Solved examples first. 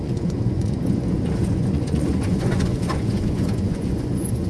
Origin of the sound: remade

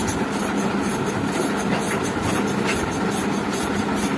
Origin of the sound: recorded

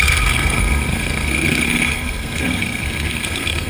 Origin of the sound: remade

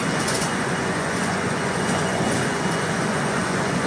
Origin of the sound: remade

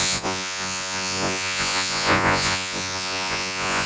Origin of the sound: remade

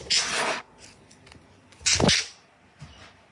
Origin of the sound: recorded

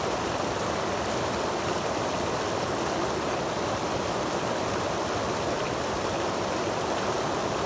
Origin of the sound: recorded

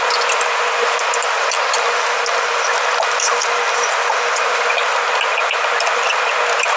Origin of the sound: recorded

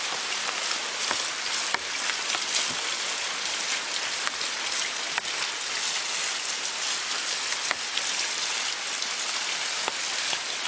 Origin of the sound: recorded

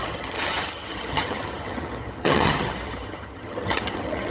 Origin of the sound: remade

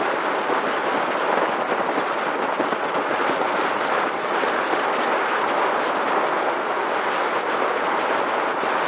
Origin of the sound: recorded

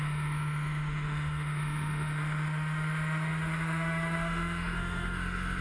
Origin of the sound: remade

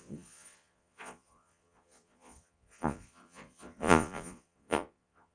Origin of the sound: remade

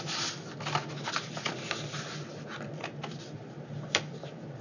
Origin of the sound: recorded